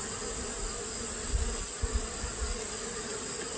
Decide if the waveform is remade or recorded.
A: recorded